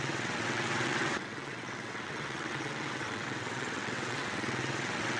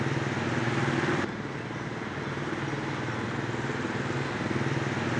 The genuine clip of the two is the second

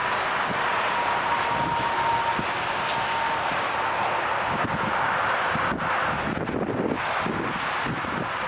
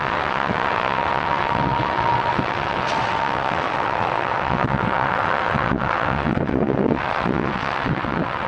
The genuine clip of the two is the first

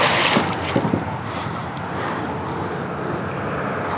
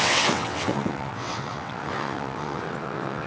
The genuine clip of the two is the first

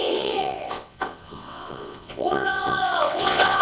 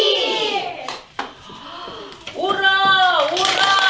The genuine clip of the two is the second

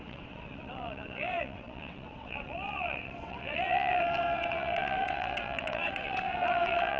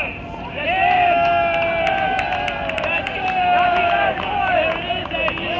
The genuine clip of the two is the second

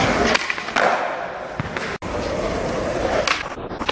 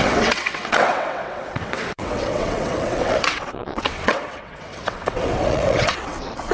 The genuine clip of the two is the first